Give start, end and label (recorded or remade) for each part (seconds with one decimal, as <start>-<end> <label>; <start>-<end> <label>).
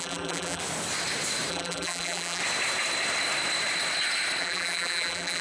0.0-0.6 remade; 0.6-1.5 recorded; 1.5-2.4 remade; 2.4-4.4 recorded; 4.4-5.4 remade